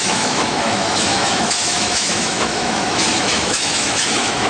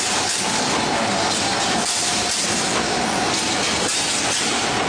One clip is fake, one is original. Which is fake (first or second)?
first